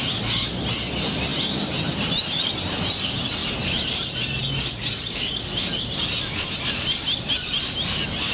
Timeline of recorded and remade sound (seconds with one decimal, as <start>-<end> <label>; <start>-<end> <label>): 0.0-8.3 recorded